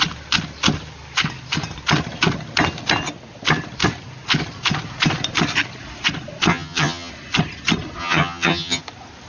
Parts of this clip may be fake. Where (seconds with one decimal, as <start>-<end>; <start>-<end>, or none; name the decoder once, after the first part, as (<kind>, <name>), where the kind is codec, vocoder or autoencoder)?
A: 6.5-7.1 (vocoder, HiFi-GAN); 8.0-8.8